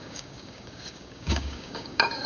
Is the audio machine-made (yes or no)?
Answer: yes